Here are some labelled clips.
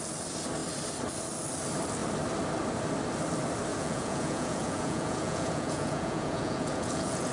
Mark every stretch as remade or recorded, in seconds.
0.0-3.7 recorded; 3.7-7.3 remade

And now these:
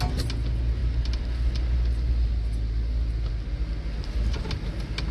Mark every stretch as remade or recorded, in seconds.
0.0-5.1 recorded

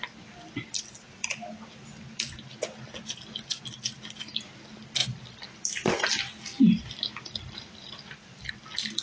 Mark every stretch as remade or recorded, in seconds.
0.0-1.2 recorded; 1.2-2.3 remade; 2.3-5.0 recorded; 5.0-8.5 remade; 8.5-9.0 recorded

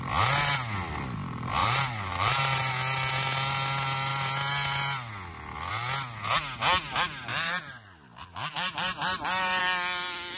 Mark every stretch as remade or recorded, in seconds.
0.0-1.6 recorded; 1.6-2.7 remade; 2.7-7.3 recorded; 7.3-9.6 remade; 9.6-10.4 recorded